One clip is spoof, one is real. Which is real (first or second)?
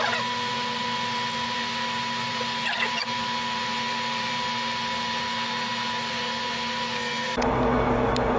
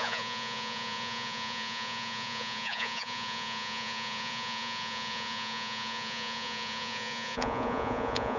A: first